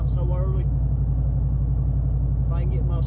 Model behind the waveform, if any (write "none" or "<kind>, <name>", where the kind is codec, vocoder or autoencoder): none